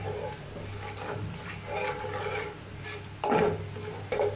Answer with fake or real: real